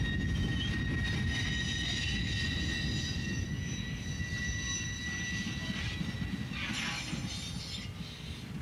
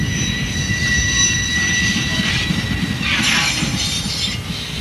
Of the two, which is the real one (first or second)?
first